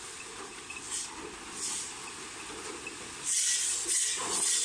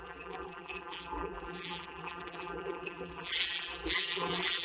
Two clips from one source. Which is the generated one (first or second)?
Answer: second